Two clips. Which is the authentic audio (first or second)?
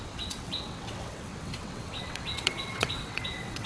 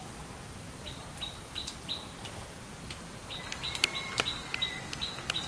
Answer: second